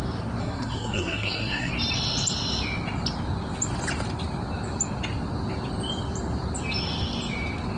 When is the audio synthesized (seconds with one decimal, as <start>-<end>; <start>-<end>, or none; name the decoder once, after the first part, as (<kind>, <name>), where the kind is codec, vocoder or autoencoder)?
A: 0.4-1.7 (codec, SNAC)

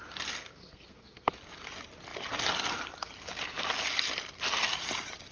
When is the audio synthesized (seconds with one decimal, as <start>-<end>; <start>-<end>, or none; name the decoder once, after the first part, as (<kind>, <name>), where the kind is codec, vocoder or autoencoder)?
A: 0.4-1.3 (codec, SNAC)

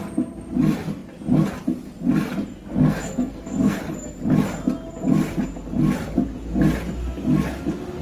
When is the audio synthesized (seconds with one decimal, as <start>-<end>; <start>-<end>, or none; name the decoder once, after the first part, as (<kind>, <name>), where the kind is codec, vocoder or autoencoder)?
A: 2.7-3.8 (codec, SNAC)

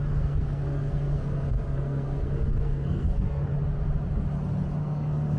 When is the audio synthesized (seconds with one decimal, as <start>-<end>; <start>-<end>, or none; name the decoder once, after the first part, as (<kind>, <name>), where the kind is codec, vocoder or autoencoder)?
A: 0.0-3.5 (codec, SNAC); 4.8-5.4

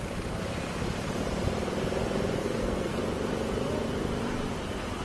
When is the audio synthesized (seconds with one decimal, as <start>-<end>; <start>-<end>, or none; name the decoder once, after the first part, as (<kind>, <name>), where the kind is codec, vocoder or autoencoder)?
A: 2.4-3.0 (codec, SNAC)

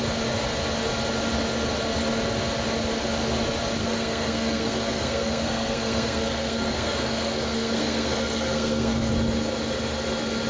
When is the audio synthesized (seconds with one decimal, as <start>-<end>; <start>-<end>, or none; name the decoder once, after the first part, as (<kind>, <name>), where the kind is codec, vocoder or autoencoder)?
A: 3.8-9.1 (codec, SNAC)

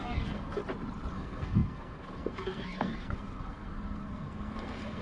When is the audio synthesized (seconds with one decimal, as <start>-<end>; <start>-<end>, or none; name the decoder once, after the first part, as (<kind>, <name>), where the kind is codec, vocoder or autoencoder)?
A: 0.0-0.6 (codec, SNAC); 1.1-5.0

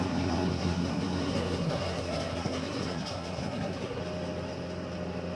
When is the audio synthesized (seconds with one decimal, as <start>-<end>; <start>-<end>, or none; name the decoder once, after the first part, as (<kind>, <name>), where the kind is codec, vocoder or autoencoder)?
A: 0.0-4.0 (codec, SNAC)